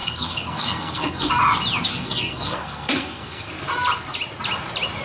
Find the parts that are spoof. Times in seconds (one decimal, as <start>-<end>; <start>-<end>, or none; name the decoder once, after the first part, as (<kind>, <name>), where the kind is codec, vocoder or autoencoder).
0.0-1.3 (codec, SNAC); 1.9-3.5